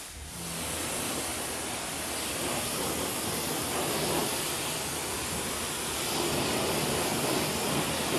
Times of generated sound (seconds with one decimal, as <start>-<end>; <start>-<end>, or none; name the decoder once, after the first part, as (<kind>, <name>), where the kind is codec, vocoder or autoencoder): none

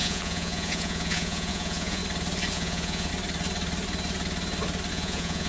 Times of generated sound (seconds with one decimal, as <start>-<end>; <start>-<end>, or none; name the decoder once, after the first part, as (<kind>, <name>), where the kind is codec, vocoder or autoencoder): 0.0-2.0 (vocoder, Vocos); 2.5-3.1; 4.9-5.5

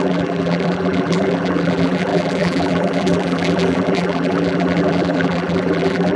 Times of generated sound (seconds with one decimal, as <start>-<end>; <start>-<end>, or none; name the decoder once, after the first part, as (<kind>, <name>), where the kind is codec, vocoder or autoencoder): 0.0-6.2 (vocoder, BigVGAN v2)

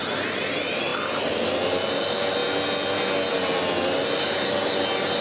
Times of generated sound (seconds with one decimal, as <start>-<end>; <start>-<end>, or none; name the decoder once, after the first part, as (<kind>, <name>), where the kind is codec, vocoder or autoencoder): none

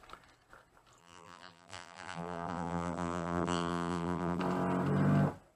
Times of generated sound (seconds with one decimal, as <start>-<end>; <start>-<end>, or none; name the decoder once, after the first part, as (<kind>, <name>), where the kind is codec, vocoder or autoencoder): 1.0-4.4 (vocoder, BigVGAN v2)

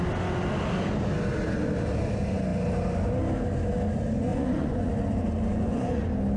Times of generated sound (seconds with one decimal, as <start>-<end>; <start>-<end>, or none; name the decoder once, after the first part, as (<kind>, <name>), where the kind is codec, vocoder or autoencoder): 4.3-4.9 (vocoder, Vocos); 5.5-6.0

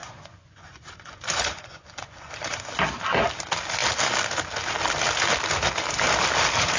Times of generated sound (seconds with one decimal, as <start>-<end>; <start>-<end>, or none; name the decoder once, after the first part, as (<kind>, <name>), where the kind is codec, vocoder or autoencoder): 0.0-2.3 (vocoder, Vocos)